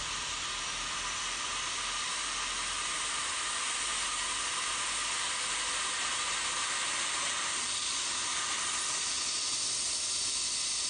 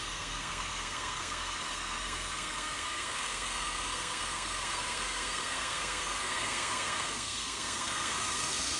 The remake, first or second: second